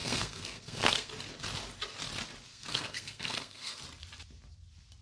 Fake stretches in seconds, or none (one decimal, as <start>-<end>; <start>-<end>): 0.0-1.1; 2.5-3.8